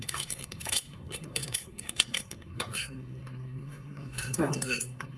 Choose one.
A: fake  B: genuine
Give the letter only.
A